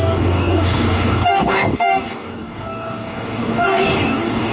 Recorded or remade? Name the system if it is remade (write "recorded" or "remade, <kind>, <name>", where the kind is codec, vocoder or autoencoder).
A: remade, codec, DAC